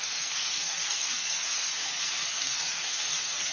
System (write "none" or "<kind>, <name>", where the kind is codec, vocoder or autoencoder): codec, SNAC